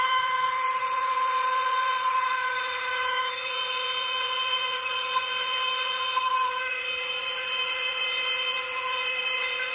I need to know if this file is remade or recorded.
remade